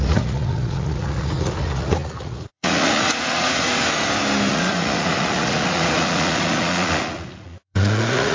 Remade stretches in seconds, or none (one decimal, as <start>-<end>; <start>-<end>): 0.0-3.7; 4.5-8.3